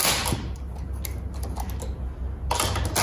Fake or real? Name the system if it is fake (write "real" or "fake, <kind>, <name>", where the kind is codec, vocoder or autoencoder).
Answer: real